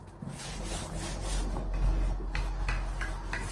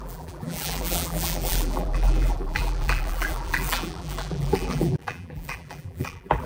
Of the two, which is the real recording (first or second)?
first